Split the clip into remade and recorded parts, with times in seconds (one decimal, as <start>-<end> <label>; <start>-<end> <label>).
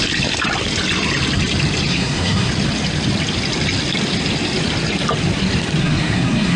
0.0-1.9 recorded; 1.9-2.5 remade; 2.5-5.8 recorded; 5.8-6.6 remade